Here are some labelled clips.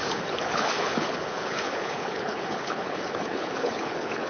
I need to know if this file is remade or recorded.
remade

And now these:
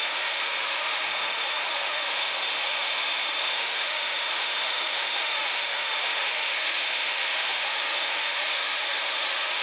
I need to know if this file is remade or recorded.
remade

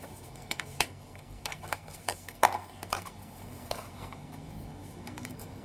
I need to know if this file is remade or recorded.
remade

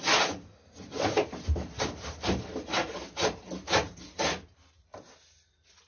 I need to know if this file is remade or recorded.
recorded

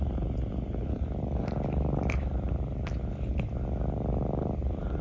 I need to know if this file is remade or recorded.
recorded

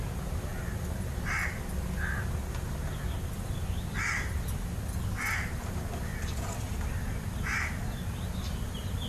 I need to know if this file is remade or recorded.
recorded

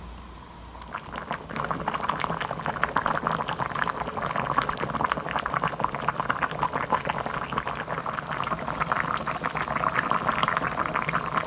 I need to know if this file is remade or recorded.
recorded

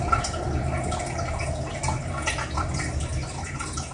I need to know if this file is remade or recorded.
recorded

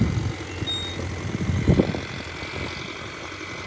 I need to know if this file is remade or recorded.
recorded